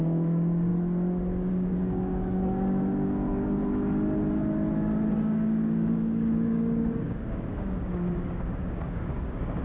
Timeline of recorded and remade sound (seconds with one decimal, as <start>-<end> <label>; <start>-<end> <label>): 0.0-0.7 remade; 0.7-1.5 recorded; 1.5-3.6 remade; 3.6-5.2 recorded; 5.2-9.6 remade

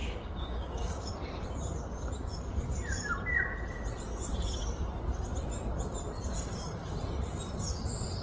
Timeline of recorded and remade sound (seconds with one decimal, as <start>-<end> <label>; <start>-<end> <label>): 0.0-1.1 remade; 1.1-8.2 recorded

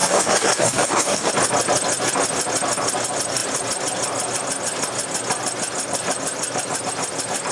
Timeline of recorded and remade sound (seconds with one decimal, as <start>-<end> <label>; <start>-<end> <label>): 0.0-1.3 remade; 1.3-7.5 recorded

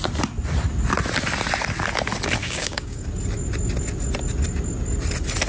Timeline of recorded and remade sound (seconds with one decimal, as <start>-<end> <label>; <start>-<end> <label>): 0.0-2.4 recorded; 2.4-3.0 remade; 3.0-5.5 recorded

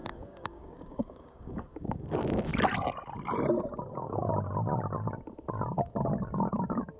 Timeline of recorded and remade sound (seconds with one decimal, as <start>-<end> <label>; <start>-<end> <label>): 0.0-2.5 remade; 2.5-7.0 recorded

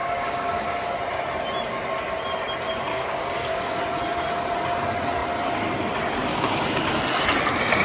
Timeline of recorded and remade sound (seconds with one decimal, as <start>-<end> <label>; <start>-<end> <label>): 0.0-1.0 remade; 1.0-2.9 recorded; 2.9-3.8 remade; 3.8-6.3 recorded; 6.3-7.0 remade; 7.0-7.8 recorded

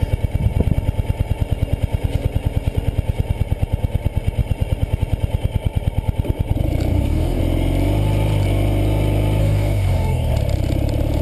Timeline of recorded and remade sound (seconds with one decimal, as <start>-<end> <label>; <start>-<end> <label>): 0.0-6.9 recorded; 6.9-7.4 remade; 7.4-9.4 recorded; 9.4-10.3 remade; 10.3-11.2 recorded